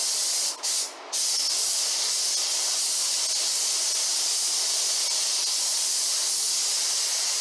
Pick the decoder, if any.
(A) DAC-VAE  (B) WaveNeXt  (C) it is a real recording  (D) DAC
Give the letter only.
C